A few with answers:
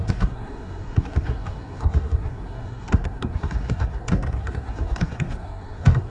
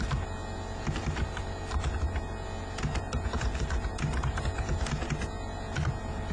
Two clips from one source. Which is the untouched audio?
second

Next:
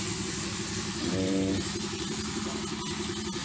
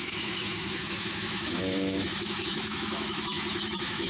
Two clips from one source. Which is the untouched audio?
first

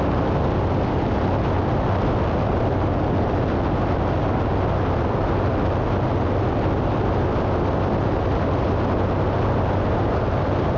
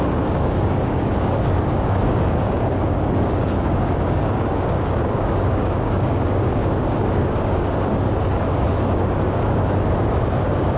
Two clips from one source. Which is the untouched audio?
first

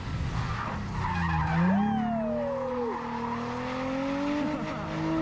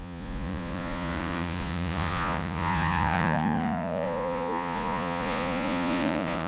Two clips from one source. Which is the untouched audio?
first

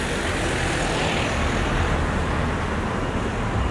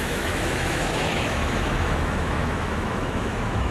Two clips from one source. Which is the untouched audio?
first